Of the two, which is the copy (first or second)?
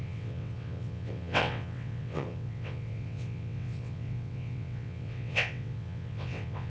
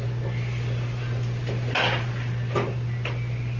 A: first